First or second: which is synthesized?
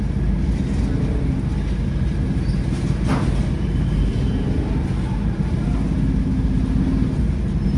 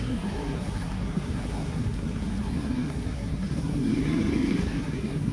second